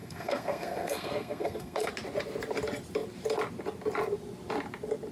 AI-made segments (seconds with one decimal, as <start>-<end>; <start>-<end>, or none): 0.0-1.9